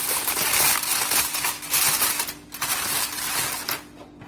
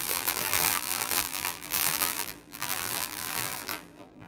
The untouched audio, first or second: first